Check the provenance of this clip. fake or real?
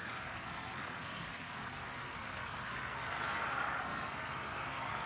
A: fake